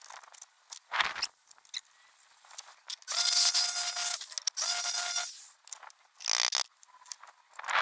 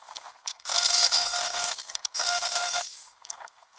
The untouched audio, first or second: first